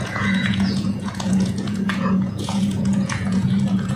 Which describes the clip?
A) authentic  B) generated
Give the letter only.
B